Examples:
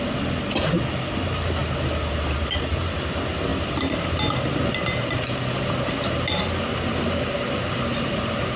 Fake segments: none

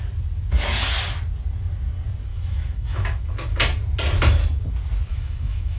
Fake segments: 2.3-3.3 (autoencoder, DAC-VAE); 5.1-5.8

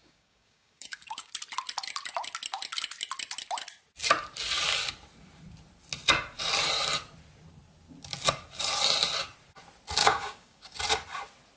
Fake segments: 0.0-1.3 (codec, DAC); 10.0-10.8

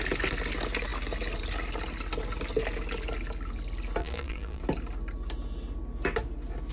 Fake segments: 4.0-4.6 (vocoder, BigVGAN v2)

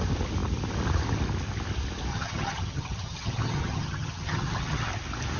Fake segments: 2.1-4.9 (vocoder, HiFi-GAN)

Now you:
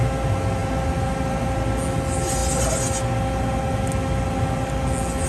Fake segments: none

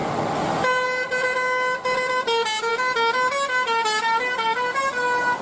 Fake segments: none

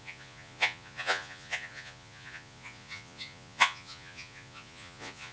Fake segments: 0.0-5.3 (vocoder, Vocos)